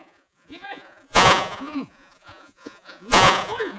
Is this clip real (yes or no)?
no